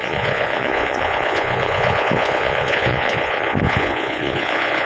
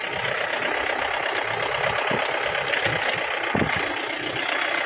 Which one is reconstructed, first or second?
first